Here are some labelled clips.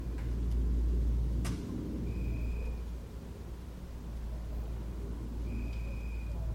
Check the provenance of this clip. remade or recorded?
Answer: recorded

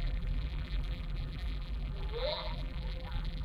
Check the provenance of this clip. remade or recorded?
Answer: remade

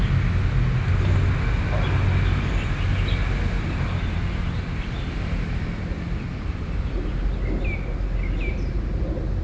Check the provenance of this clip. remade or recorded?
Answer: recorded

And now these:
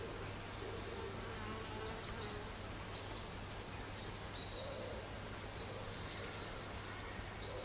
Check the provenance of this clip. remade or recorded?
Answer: recorded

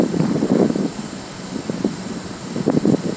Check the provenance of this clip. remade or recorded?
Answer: recorded